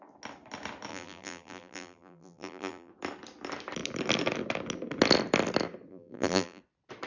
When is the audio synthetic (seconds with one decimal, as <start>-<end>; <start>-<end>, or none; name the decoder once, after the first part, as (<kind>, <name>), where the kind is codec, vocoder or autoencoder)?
0.9-2.9 (vocoder, BigVGAN v2); 5.9-6.6